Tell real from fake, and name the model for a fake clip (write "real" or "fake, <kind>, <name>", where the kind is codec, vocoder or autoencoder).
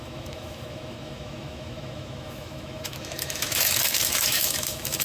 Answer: fake, autoencoder, DAC-VAE